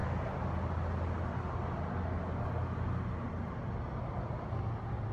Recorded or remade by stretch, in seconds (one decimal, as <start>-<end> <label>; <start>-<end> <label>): 0.0-3.1 recorded; 3.1-5.1 remade